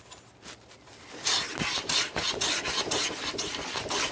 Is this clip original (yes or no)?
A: yes